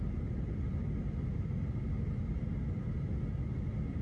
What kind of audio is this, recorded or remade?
recorded